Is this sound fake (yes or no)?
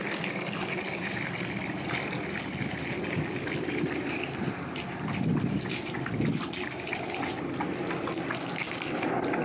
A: no